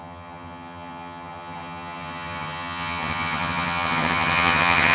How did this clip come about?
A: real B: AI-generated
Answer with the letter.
B